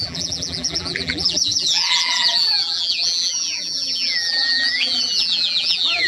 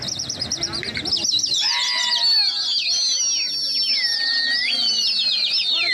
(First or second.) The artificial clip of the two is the first